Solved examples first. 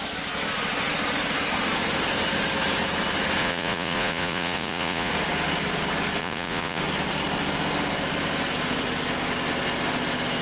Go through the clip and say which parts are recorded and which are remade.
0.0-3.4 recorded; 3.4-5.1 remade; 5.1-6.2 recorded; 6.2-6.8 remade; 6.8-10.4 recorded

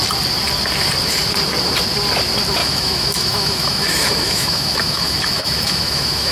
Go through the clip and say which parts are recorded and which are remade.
0.0-2.6 recorded; 2.6-6.3 remade

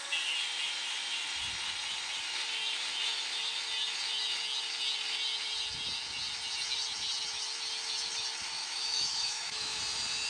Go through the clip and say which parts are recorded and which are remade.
0.0-8.6 recorded; 8.6-9.8 remade; 9.8-10.3 recorded

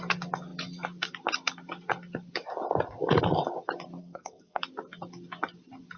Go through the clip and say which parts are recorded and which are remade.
0.0-4.0 recorded; 4.0-4.6 remade; 4.6-6.0 recorded

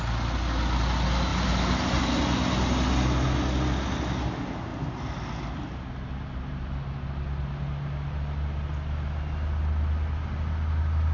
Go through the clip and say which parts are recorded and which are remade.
0.0-1.3 recorded; 1.3-2.0 remade; 2.0-11.1 recorded